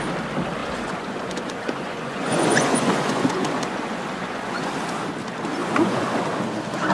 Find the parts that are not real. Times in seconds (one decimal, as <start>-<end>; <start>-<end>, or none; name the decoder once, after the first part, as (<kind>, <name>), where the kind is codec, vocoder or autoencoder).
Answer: 0.6-4.7 (vocoder, Vocos); 5.6-6.2